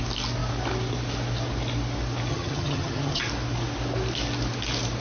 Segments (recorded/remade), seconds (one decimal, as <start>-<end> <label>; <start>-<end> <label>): 0.0-2.3 recorded; 2.3-3.2 remade; 3.2-5.0 recorded